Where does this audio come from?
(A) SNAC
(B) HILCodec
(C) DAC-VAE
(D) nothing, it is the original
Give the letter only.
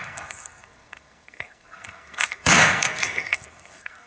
A